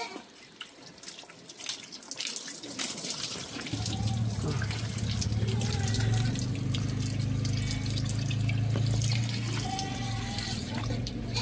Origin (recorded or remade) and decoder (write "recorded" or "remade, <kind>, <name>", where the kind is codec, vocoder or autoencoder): recorded